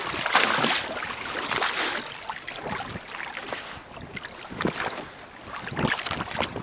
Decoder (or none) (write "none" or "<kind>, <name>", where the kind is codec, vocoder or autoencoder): none